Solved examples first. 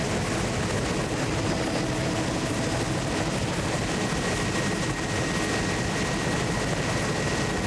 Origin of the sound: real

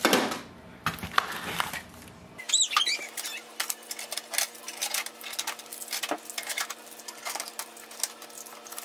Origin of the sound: real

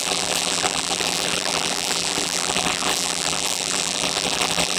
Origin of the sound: fake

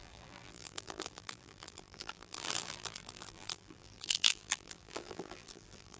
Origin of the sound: fake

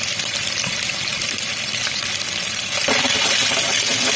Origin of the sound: real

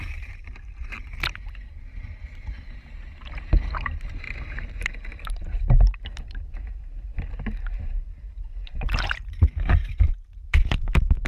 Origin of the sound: fake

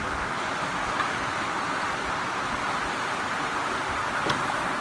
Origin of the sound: real